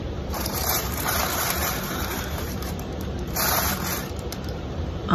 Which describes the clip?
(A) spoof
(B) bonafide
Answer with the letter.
A